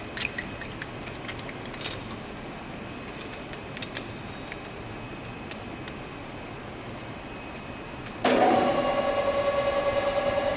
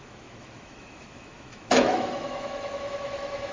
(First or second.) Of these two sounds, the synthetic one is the second